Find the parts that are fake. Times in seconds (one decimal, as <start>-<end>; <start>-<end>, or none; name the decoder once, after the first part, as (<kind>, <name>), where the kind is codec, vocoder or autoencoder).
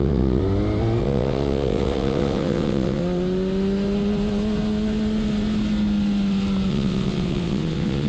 0.0-0.4 (vocoder, WaveNeXt); 1.0-3.0; 6.7-8.1